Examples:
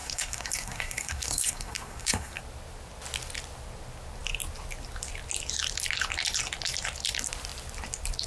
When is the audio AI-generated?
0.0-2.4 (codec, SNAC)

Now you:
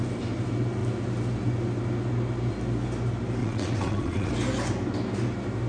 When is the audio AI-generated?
3.4-4.3 (vocoder, WaveNeXt)

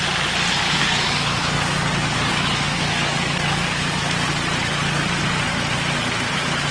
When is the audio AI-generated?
0.6-4.0 (codec, DAC)

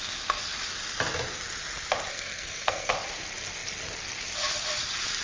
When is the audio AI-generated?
2.1-2.9 (codec, SNAC)

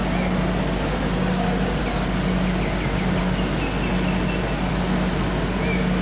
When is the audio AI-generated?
none

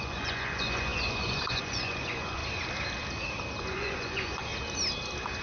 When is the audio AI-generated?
0.0-2.4 (vocoder, Vocos); 3.6-4.5

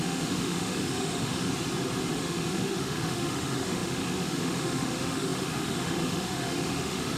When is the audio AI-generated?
0.0-1.5 (autoencoder, DAC-VAE); 2.1-7.2